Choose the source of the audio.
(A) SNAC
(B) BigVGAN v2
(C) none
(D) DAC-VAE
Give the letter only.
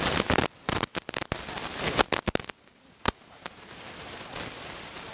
C